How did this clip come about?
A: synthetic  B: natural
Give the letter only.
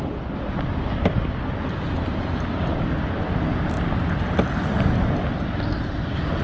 B